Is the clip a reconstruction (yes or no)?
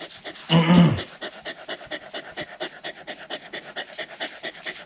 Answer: no